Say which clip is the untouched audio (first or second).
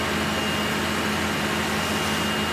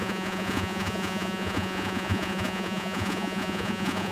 first